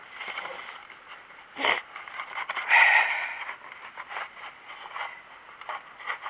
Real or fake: real